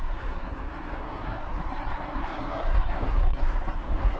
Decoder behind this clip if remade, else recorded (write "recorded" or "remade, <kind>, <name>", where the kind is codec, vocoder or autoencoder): remade, codec, SNAC